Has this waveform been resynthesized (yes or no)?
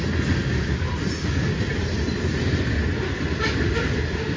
no